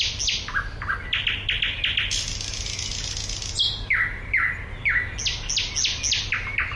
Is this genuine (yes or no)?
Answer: yes